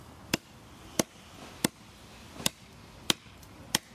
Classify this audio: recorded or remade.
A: recorded